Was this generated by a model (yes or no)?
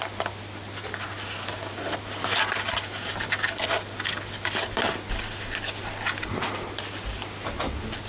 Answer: no